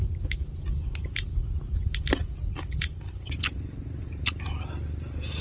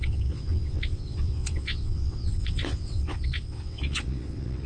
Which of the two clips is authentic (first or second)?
first